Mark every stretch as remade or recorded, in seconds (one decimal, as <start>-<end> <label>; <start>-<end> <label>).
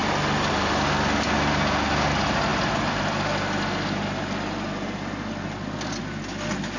0.0-6.8 recorded